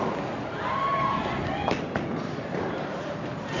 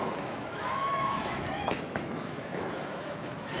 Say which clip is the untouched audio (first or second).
first